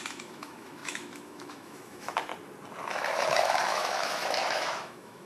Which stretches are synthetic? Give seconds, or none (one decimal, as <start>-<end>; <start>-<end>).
0.0-2.3; 2.9-5.3